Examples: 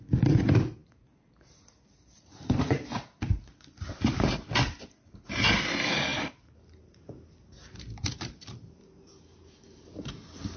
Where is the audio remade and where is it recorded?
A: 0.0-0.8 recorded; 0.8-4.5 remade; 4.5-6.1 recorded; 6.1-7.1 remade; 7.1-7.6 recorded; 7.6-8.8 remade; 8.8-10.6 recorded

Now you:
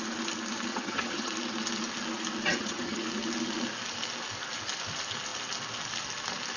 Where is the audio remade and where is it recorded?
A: 0.0-0.7 recorded; 0.7-1.3 remade; 1.3-2.5 recorded; 2.5-3.0 remade; 3.0-6.6 recorded

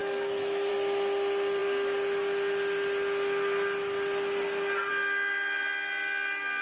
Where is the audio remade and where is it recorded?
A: 0.0-0.7 remade; 0.7-6.6 recorded

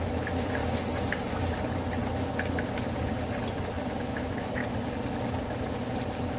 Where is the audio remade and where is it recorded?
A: 0.0-0.6 remade; 0.6-4.0 recorded; 4.0-4.6 remade; 4.6-6.4 recorded

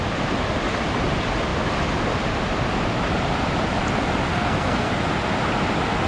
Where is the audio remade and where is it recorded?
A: 0.0-4.3 recorded; 4.3-4.9 remade; 4.9-6.1 recorded

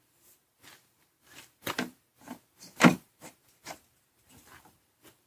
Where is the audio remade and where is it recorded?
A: 0.0-5.3 remade

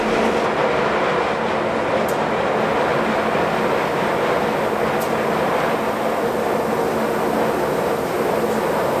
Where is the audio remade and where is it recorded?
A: 0.0-9.0 recorded